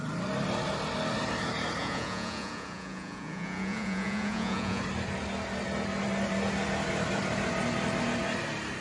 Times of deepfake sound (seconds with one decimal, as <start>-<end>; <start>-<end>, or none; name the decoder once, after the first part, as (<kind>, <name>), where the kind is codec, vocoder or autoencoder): 1.8-4.8 (vocoder, Vocos)